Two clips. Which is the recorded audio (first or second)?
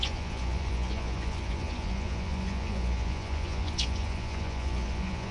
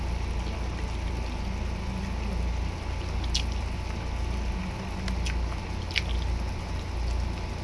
second